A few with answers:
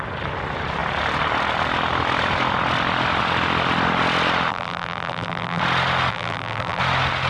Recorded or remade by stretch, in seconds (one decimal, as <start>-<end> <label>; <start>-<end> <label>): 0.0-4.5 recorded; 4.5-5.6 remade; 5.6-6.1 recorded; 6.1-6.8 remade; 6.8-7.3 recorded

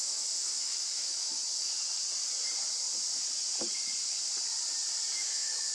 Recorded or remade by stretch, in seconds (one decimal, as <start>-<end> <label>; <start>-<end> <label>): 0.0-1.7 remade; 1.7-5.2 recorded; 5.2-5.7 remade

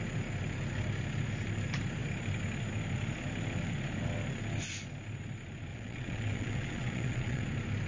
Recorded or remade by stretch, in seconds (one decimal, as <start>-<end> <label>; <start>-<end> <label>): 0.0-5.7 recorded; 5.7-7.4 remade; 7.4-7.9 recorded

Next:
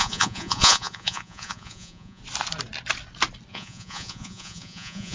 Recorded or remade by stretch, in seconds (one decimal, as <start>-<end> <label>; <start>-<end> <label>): 0.0-2.2 remade; 2.2-3.5 recorded; 3.5-5.1 remade

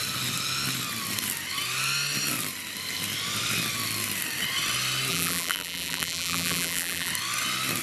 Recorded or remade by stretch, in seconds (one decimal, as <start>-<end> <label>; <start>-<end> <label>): 0.0-5.1 recorded; 5.1-7.1 remade; 7.1-7.8 recorded

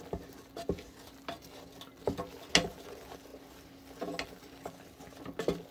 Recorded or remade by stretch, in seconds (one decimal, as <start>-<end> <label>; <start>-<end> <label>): 0.0-5.7 recorded

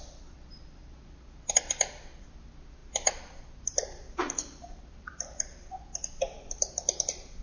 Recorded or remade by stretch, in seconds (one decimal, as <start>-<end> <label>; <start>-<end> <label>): 0.0-7.4 remade

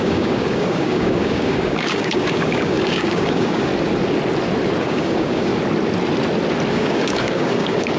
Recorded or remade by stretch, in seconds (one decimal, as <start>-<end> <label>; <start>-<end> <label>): 0.0-3.7 remade; 3.7-4.8 recorded; 4.8-5.5 remade; 5.5-6.7 recorded; 6.7-8.0 remade